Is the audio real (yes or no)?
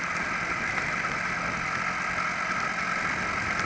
yes